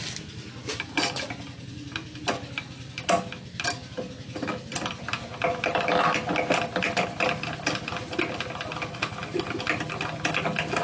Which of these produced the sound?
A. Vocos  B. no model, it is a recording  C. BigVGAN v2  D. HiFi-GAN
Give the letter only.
B